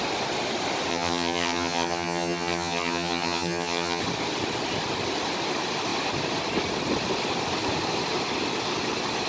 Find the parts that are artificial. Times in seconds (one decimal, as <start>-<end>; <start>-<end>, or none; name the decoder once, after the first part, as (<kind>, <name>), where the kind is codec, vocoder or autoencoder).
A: 0.9-4.0 (vocoder, HiFi-GAN)